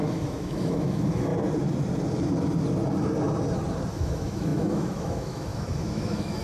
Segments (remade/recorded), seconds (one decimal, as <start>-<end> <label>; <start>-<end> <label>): 0.0-1.3 remade; 1.3-3.9 recorded; 3.9-6.4 remade